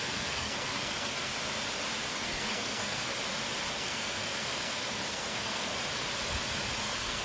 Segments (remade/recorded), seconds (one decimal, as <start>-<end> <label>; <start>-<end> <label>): 0.0-1.3 remade; 1.3-2.1 recorded; 2.1-3.1 remade; 3.1-3.7 recorded; 3.7-5.7 remade; 5.7-6.8 recorded; 6.8-7.2 remade